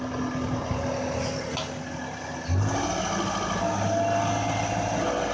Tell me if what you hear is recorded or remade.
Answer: recorded